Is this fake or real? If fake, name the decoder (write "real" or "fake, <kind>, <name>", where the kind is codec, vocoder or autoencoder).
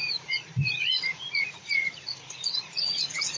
fake, vocoder, Vocos